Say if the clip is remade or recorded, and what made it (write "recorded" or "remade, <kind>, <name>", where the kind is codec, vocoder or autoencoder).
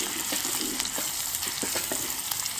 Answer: recorded